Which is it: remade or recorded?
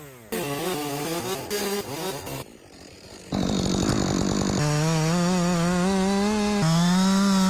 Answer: recorded